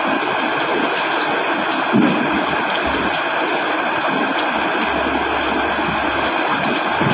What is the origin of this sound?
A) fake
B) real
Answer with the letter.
B